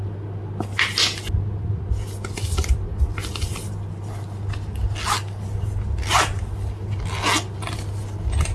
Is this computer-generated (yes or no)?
no